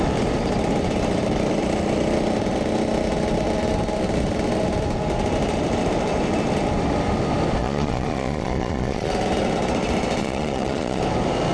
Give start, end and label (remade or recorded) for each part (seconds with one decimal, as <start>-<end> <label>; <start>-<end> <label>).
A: 0.0-7.6 recorded; 7.6-9.1 remade; 9.1-10.2 recorded; 10.2-11.0 remade; 11.0-11.5 recorded